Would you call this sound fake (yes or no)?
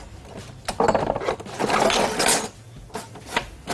no